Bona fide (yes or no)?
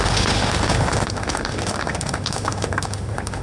no